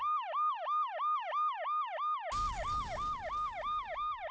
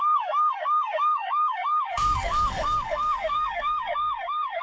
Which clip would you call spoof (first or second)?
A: second